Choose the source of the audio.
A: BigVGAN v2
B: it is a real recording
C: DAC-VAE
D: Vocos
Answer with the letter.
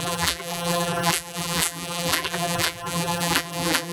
A